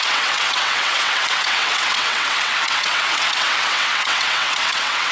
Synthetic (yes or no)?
yes